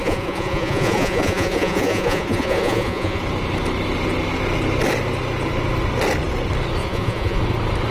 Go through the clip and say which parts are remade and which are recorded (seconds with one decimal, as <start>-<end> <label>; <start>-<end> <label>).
0.0-3.2 remade; 3.2-6.8 recorded; 6.8-7.4 remade; 7.4-7.9 recorded